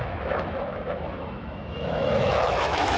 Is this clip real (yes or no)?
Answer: no